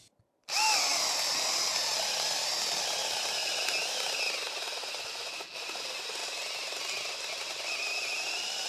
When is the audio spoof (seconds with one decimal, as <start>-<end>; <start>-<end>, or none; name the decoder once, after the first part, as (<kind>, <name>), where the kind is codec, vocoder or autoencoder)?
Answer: none